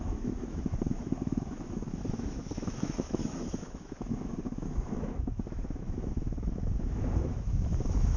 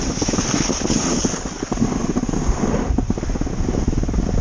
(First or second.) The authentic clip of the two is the second